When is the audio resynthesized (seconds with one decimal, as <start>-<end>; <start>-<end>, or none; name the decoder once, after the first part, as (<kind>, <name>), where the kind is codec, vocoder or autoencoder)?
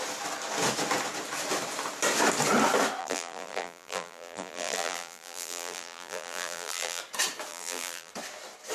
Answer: 3.0-7.0 (vocoder, BigVGAN v2); 7.5-8.1